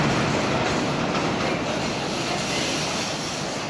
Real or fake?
real